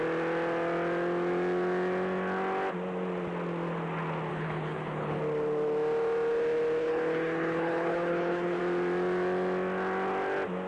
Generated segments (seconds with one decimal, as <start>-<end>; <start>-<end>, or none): 4.3-5.2; 6.8-8.6